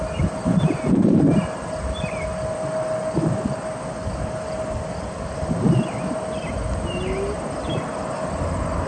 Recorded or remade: recorded